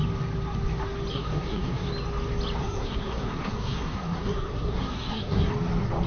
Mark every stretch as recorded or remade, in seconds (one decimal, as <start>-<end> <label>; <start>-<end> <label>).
0.0-1.1 recorded; 1.1-1.9 remade; 1.9-2.6 recorded; 2.6-5.5 remade; 5.5-6.1 recorded